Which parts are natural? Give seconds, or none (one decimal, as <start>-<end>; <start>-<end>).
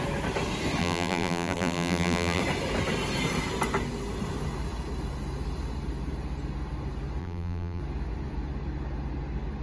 0.0-0.8; 2.4-7.2; 7.8-9.6